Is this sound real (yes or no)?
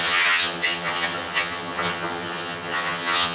no